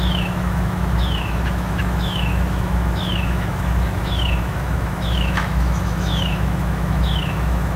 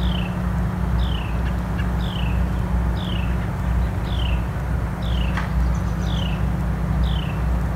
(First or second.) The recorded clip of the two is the second